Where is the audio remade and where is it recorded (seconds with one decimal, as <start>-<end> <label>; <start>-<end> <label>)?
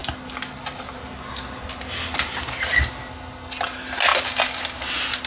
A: 0.0-5.3 recorded